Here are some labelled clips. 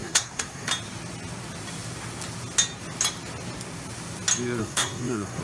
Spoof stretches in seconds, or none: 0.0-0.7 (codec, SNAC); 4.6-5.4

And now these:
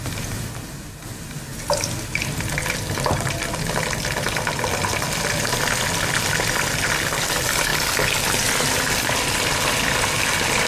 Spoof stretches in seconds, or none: none

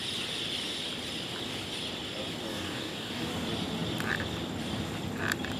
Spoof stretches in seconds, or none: 2.5-3.3 (codec, DAC)